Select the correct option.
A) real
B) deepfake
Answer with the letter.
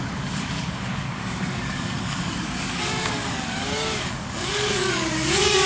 B